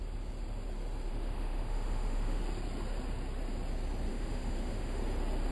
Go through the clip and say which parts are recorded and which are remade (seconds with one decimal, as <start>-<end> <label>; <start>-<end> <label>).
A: 0.0-1.1 recorded; 1.1-2.4 remade; 2.4-4.1 recorded; 4.1-5.0 remade; 5.0-5.5 recorded